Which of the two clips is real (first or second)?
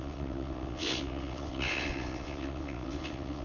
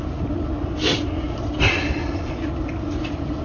second